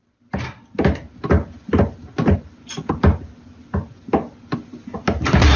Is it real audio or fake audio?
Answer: real